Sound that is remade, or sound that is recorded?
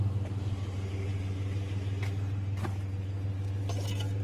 recorded